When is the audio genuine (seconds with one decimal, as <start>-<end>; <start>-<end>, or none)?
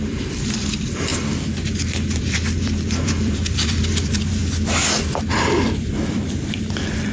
1.1-2.2; 4.4-5.3